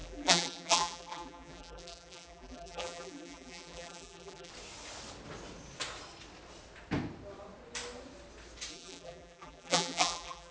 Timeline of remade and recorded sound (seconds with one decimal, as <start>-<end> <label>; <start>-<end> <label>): 0.0-4.5 remade; 4.5-8.7 recorded; 8.7-10.5 remade